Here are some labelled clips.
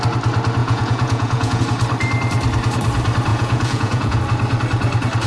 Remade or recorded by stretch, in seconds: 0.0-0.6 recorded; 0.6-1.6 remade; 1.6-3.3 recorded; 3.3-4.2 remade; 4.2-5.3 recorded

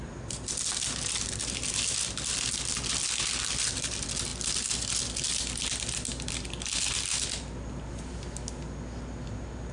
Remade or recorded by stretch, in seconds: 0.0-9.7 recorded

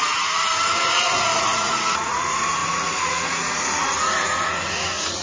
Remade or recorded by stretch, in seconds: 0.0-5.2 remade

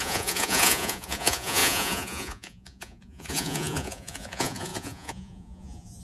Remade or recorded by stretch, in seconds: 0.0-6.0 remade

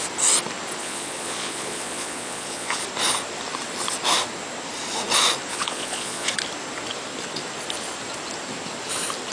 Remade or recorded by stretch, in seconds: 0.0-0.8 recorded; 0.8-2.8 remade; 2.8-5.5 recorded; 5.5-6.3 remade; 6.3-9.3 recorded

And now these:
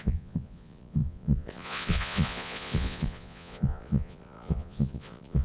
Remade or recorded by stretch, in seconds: 0.0-5.4 remade